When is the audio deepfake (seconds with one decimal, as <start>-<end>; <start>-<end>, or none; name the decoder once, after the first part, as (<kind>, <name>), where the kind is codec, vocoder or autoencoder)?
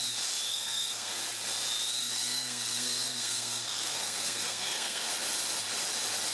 0.5-1.1 (codec, SNAC); 2.0-5.1